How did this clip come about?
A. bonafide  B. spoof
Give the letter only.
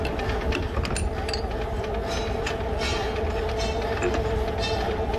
A